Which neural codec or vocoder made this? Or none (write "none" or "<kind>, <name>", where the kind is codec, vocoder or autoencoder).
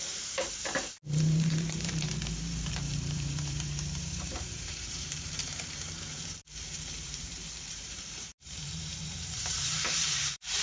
vocoder, BigVGAN v2